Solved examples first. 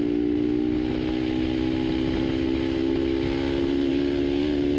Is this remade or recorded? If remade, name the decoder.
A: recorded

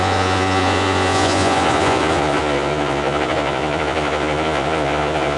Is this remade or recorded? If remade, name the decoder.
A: remade, vocoder, Vocos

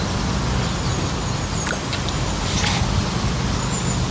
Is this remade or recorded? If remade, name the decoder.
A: recorded